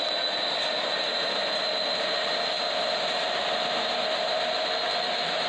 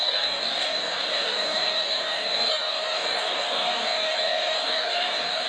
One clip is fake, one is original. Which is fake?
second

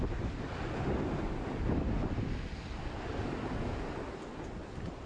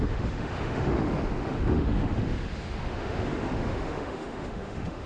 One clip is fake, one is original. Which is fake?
second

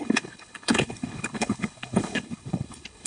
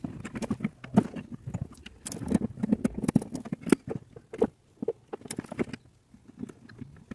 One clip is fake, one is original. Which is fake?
first